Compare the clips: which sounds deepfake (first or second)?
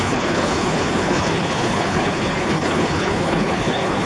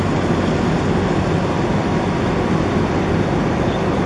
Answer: first